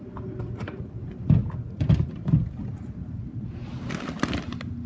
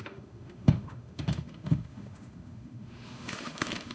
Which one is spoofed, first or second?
second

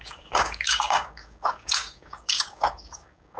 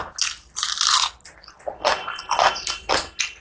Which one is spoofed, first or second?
first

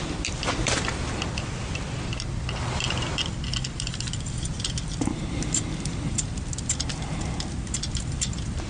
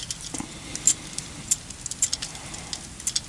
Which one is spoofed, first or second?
first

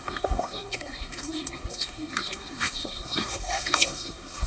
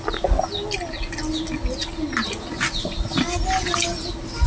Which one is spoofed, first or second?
first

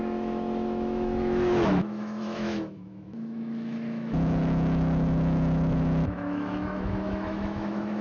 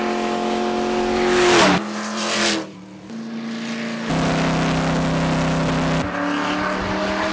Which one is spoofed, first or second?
first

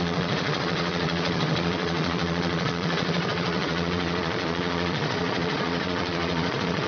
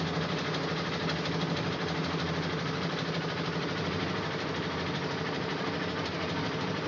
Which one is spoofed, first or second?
first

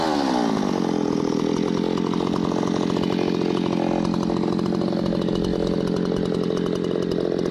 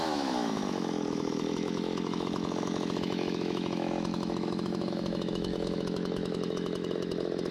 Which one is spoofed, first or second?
second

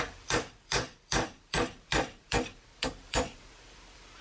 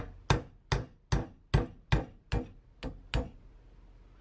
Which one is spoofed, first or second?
first